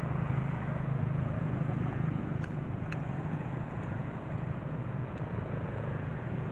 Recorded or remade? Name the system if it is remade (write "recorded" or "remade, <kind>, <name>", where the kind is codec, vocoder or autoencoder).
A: remade, vocoder, Vocos